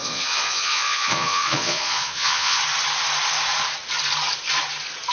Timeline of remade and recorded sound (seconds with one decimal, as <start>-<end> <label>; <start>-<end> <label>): 0.0-2.6 remade; 2.6-5.1 recorded